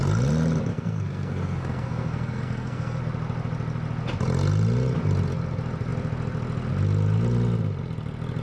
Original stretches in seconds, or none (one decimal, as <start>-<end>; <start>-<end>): 0.0-0.7; 3.0-8.4